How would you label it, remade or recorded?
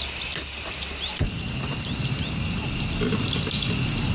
recorded